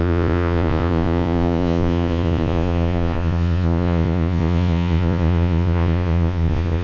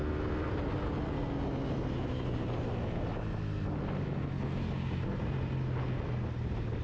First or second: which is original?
second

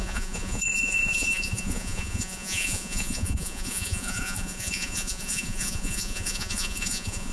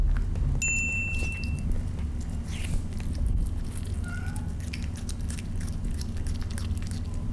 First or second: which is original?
second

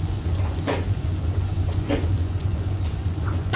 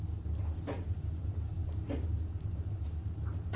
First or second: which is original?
second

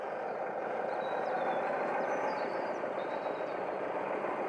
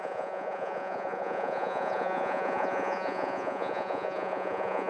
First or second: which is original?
first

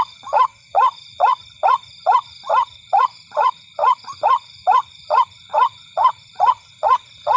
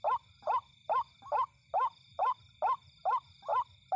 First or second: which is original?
second